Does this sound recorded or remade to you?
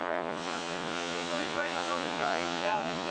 remade